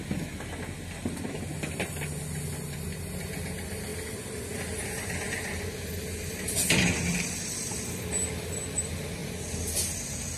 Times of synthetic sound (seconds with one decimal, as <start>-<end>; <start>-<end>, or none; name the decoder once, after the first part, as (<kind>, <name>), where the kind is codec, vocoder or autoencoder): none